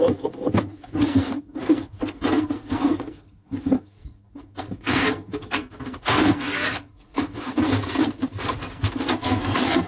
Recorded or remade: remade